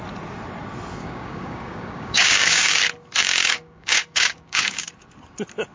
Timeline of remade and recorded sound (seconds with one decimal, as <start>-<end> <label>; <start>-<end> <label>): 0.0-1.0 recorded; 1.0-2.8 remade; 2.8-3.2 recorded; 3.2-4.9 remade; 4.9-5.7 recorded